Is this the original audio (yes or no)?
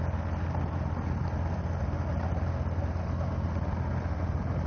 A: yes